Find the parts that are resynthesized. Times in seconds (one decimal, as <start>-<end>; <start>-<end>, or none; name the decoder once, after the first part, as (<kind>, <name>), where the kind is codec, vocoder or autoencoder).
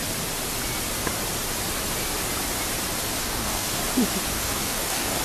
3.2-3.8 (codec, DAC); 4.3-5.2